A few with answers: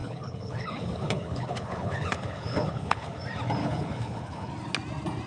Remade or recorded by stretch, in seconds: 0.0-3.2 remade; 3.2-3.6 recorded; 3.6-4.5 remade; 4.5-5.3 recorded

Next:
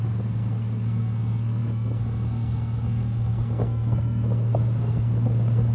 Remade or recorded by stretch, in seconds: 0.0-5.7 remade

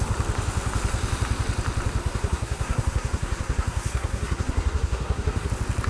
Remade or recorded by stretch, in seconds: 0.0-2.0 recorded; 2.0-5.5 remade; 5.5-5.9 recorded

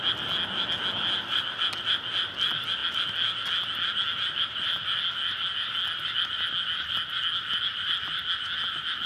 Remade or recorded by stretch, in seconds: 0.0-9.1 recorded

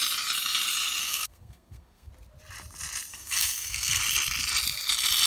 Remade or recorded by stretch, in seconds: 0.0-1.0 recorded; 1.0-2.1 remade; 2.1-3.1 recorded; 3.1-4.0 remade; 4.0-5.3 recorded

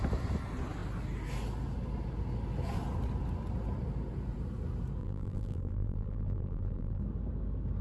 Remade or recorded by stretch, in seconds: 0.0-5.0 recorded; 5.0-7.0 remade; 7.0-7.8 recorded

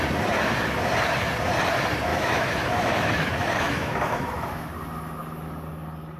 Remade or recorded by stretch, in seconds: 0.0-2.1 recorded; 2.1-4.7 remade; 4.7-6.2 recorded